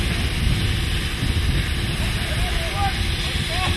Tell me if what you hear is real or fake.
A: real